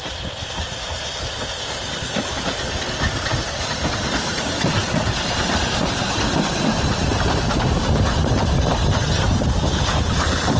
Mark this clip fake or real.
fake